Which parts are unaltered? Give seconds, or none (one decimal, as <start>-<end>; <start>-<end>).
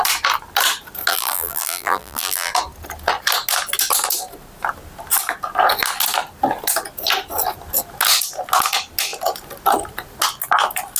0.0-1.1; 2.5-11.0